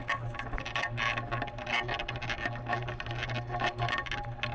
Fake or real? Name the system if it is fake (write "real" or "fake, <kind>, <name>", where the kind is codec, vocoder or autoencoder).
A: real